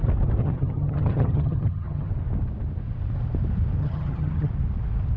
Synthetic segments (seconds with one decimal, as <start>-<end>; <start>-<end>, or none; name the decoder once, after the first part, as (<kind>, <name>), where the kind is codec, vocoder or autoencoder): 0.4-2.1 (vocoder, HiFi-GAN); 3.8-4.5